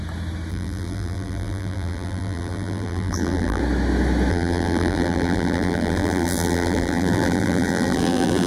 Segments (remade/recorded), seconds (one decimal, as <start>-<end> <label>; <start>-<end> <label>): 0.0-0.5 recorded; 0.5-3.6 remade; 3.6-4.3 recorded; 4.3-8.5 remade